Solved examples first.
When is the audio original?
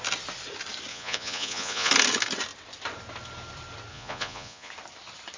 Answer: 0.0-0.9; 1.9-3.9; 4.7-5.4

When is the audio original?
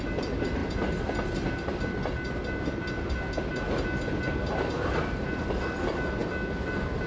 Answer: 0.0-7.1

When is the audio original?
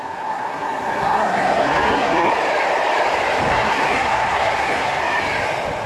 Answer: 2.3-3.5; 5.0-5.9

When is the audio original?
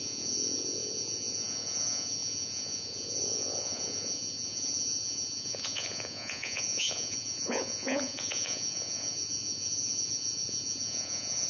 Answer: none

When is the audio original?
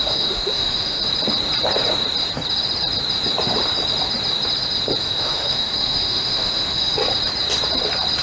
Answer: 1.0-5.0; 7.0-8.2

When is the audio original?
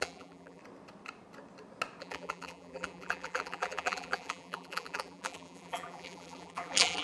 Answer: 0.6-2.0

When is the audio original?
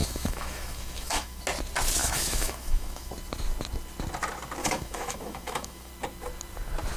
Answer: 1.4-2.0; 3.1-4.6; 5.9-7.0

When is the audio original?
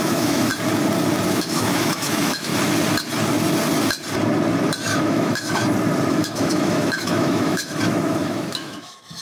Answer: 0.5-1.3; 2.5-5.0; 5.6-6.1